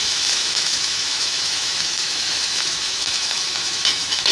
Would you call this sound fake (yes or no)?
yes